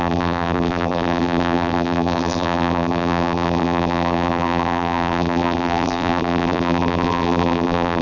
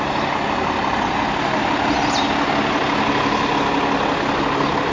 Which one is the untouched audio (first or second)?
second